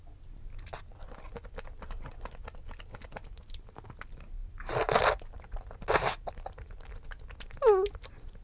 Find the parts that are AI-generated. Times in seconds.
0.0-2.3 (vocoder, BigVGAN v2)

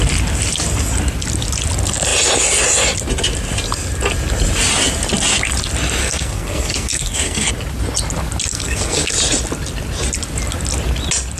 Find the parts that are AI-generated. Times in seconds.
6.0-7.5 (codec, SNAC); 8.5-9.1

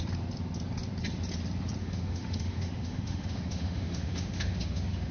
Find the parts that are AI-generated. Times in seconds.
1.8-5.1 (autoencoder, DAC-VAE)

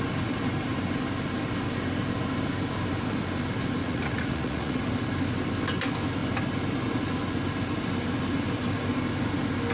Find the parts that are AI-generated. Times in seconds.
3.8-4.8 (vocoder, Vocos)

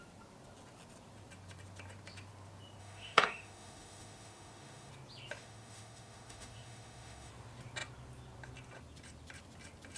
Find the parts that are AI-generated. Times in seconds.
2.8-4.9 (autoencoder, DAC-VAE); 5.4-7.3

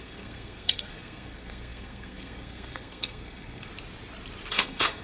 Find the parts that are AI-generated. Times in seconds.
0.0-3.7 (codec, SNAC); 4.5-5.0

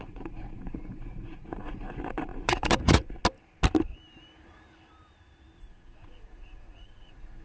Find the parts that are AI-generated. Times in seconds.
0.0-3.2 (vocoder, Vocos); 5.6-7.4

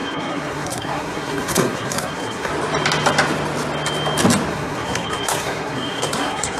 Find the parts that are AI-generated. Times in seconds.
0.0-2.5 (codec, SNAC); 4.5-6.6